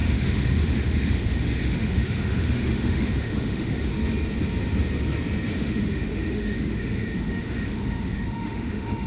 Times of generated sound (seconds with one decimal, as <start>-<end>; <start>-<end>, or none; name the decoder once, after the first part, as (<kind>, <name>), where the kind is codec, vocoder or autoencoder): 0.0-3.9 (autoencoder, DAC-VAE); 5.5-9.1